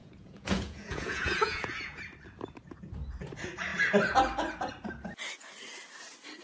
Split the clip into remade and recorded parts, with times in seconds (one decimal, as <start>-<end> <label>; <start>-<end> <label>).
0.0-2.0 remade; 2.0-6.4 recorded